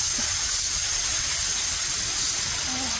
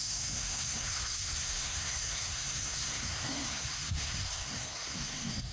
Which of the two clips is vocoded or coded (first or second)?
second